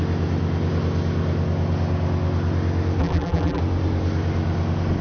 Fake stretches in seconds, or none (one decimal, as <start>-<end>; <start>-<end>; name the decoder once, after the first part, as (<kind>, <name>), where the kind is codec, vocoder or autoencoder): 3.0-3.6 (vocoder, BigVGAN v2)